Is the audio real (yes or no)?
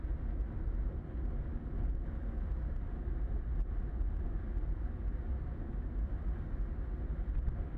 yes